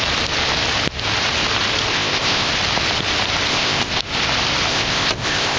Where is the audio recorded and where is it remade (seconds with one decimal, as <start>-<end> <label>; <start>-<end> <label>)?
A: 0.0-1.9 recorded; 1.9-2.5 remade; 2.5-3.5 recorded; 3.5-4.0 remade; 4.0-4.7 recorded; 4.7-5.6 remade

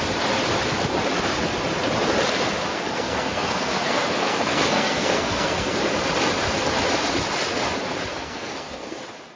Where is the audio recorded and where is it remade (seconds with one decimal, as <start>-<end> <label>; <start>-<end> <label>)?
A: 0.0-2.7 recorded; 2.7-5.8 remade; 5.8-8.1 recorded; 8.1-9.0 remade; 9.0-9.4 recorded

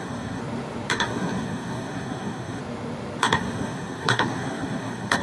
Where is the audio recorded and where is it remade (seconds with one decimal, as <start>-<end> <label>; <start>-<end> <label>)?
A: 0.0-0.4 remade; 0.4-0.9 recorded; 0.9-2.6 remade; 2.6-3.2 recorded; 3.2-5.2 remade

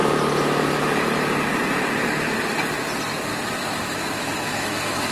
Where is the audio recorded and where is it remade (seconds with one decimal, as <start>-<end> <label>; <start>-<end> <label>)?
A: 0.0-3.3 recorded; 3.3-5.1 remade